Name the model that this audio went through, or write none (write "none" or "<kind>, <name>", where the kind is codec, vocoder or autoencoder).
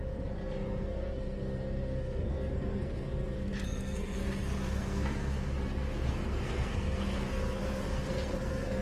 codec, SNAC